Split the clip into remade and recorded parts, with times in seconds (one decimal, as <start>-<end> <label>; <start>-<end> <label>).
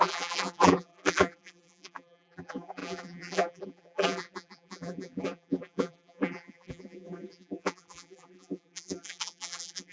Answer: 0.0-9.9 remade